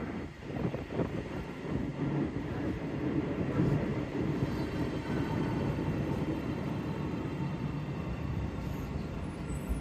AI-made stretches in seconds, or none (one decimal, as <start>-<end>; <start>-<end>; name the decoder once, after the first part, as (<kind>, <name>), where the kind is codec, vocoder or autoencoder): 0.0-1.9 (vocoder, BigVGAN v2); 2.4-9.8

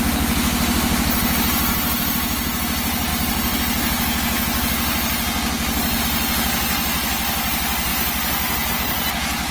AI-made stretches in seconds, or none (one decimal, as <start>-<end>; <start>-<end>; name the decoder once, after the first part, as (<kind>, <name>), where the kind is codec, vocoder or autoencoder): none

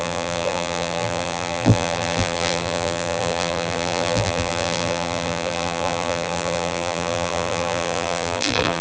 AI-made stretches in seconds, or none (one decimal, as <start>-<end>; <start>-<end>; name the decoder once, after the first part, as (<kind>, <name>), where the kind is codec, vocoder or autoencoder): 0.0-8.8 (vocoder, BigVGAN v2)

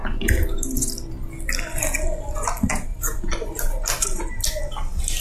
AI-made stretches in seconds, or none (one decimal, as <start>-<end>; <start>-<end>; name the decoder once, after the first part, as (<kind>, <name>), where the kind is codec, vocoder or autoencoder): 0.0-1.1 (vocoder, BigVGAN v2); 2.9-4.3

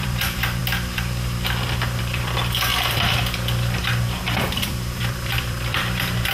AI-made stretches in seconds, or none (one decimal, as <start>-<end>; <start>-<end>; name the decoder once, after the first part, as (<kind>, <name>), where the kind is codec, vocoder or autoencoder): 0.0-0.6 (vocoder, BigVGAN v2); 2.0-6.3

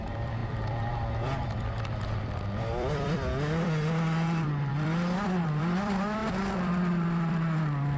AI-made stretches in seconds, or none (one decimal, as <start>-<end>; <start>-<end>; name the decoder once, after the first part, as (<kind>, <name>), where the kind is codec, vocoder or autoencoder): 0.0-8.0 (vocoder, BigVGAN v2)

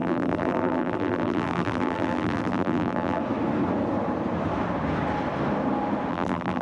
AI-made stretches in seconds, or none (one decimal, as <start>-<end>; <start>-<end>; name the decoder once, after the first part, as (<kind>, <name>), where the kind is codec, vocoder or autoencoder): 0.0-3.2 (vocoder, BigVGAN v2); 6.1-6.6